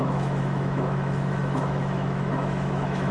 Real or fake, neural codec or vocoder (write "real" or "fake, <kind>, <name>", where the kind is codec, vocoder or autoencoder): fake, autoencoder, DAC-VAE